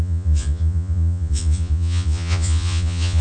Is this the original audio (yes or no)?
no